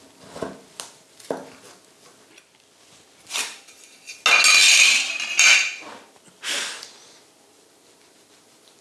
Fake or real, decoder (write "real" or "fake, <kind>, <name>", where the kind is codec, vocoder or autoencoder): real